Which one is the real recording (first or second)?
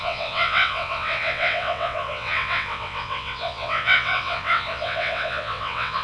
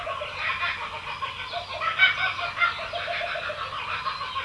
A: second